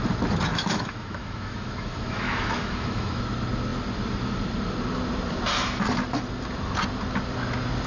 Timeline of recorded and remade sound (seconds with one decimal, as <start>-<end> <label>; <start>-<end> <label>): 0.0-0.5 recorded; 0.5-3.2 remade; 3.2-7.9 recorded